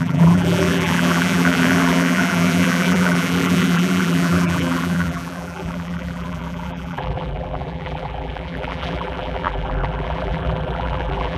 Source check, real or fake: fake